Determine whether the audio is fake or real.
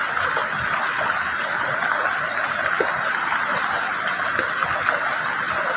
real